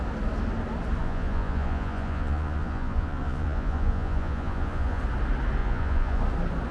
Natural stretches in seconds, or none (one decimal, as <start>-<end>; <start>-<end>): 0.0-1.0; 5.0-5.6; 6.2-6.7